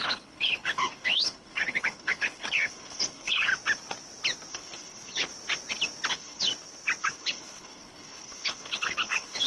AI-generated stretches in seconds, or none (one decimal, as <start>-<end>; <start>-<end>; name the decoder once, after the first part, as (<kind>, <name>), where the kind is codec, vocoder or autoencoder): 0.0-3.5 (codec, HILCodec); 4.5-5.3; 6.1-6.5; 7.0-9.5